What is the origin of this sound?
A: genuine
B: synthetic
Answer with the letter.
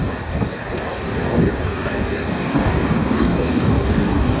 B